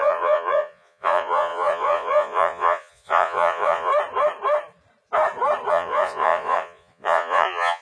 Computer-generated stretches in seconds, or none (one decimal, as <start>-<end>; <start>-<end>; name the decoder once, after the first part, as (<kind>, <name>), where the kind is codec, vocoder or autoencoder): 0.0-3.9 (vocoder, Vocos); 5.7-7.8